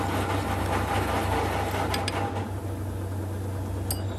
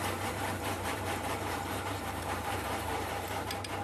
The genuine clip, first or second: first